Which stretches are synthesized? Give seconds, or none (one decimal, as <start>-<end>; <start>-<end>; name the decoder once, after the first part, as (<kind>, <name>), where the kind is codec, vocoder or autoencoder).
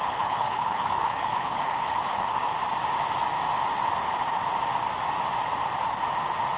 0.0-2.5 (codec, HILCodec)